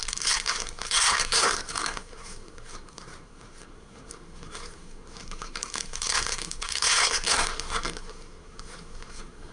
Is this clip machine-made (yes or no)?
yes